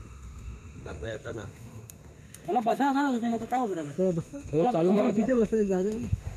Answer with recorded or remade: remade